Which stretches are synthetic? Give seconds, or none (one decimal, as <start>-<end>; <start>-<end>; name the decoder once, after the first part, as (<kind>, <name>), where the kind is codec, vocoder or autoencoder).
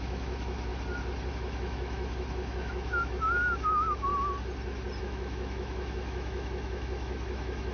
0.0-0.7 (autoencoder, DAC-VAE); 1.3-4.1; 5.0-7.7